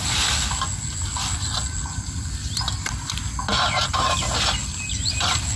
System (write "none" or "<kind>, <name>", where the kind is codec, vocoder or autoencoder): none